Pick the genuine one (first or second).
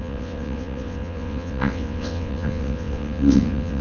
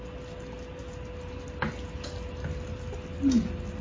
second